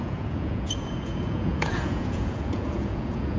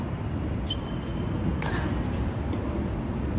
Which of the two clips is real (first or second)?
second